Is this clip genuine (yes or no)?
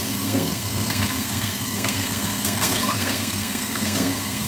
no